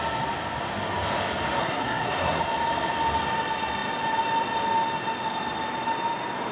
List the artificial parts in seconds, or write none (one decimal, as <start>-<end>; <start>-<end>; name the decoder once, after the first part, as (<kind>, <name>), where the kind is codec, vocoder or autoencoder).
1.6-2.4 (codec, SNAC)